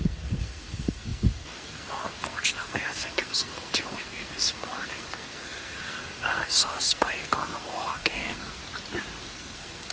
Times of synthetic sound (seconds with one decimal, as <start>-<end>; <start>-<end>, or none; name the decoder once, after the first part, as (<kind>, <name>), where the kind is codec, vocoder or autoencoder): 0.0-8.6 (codec, SNAC); 9.2-9.9